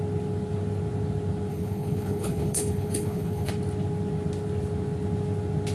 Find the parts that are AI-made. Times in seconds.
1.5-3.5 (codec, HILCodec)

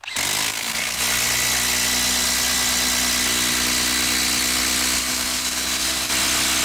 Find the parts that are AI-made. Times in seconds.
0.5-1.0 (codec, DAC); 5.0-6.1

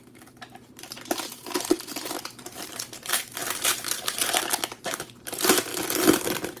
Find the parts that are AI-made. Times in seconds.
0.0-5.7 (vocoder, BigVGAN v2)

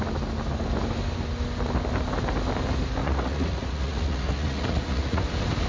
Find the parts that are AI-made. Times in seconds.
3.0-5.2 (vocoder, Vocos)

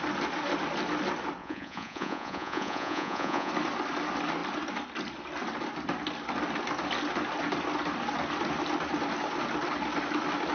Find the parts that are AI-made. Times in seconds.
1.4-3.5 (vocoder, Vocos)

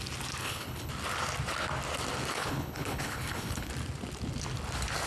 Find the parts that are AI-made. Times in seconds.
0.4-0.9 (codec, HILCodec); 2.3-3.7